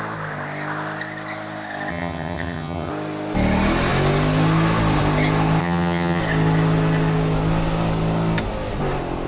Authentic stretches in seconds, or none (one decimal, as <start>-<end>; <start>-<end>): 0.0-1.9; 2.9-5.6; 6.2-9.3